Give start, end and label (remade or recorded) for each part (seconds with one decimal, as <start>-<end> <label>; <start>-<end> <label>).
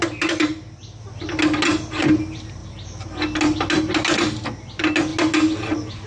0.0-6.1 recorded